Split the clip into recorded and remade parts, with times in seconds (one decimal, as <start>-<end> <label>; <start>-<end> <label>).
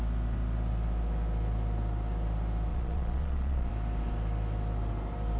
0.0-2.7 recorded; 2.7-3.7 remade; 3.7-5.4 recorded